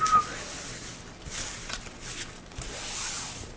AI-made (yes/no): no